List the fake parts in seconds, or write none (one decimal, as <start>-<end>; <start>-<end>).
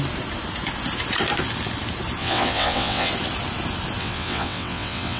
2.2-3.1; 4.0-5.2